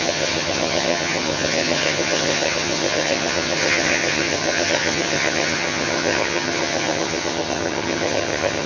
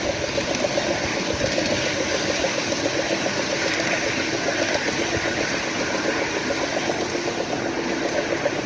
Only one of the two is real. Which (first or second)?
second